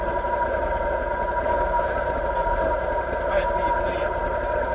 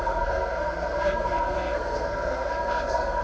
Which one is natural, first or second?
first